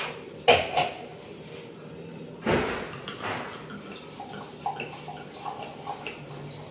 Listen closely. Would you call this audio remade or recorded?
recorded